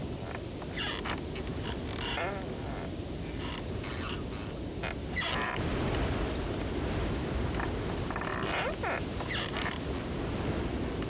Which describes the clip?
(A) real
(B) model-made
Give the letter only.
A